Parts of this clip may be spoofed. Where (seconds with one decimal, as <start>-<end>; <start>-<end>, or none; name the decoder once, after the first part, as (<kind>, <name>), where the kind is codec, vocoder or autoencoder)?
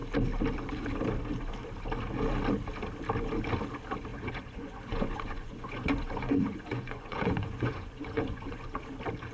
4.1-8.9 (vocoder, Vocos)